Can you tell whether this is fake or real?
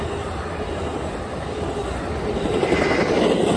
real